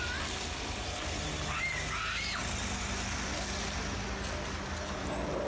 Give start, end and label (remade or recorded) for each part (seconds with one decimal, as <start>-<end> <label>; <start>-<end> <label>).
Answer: 0.0-5.5 recorded